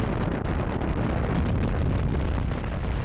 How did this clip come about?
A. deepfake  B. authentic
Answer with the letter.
B